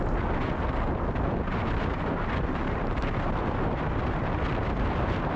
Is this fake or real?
real